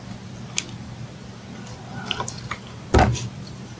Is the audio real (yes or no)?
yes